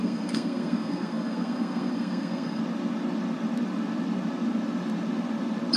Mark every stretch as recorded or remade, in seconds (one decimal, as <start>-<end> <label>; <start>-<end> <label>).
0.0-2.6 remade; 2.6-5.8 recorded